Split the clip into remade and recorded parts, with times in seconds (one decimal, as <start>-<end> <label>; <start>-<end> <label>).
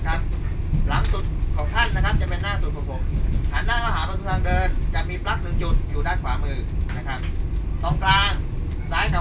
0.0-9.2 recorded